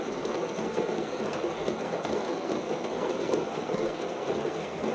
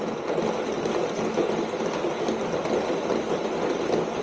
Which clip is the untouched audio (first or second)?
second